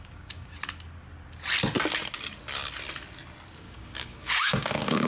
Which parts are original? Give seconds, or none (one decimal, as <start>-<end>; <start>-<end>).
0.5-3.6